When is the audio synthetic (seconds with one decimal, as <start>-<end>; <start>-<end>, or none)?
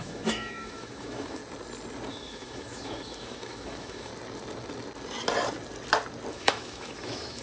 0.0-1.4; 2.1-4.1; 6.3-7.4